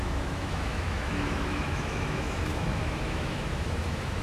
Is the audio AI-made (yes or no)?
yes